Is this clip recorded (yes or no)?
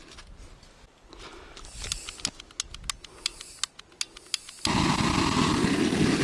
yes